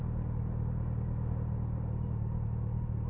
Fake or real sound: real